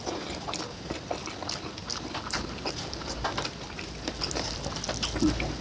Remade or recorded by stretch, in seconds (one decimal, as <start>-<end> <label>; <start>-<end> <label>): 0.0-5.6 recorded